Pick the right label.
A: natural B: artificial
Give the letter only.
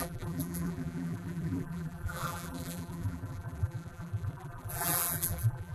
B